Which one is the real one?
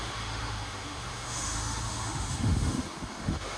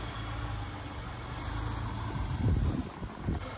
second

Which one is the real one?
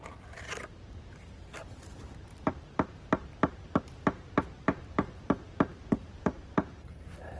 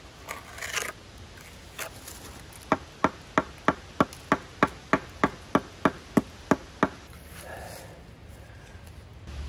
second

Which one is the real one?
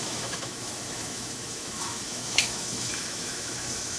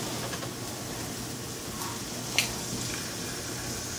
second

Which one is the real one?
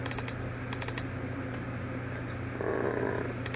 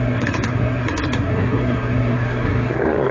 first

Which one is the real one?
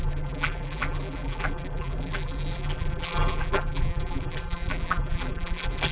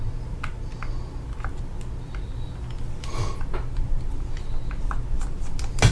second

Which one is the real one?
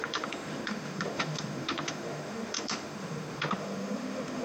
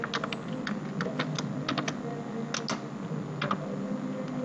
second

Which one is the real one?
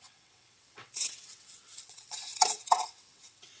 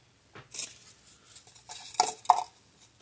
second